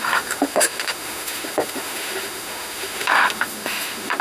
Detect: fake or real fake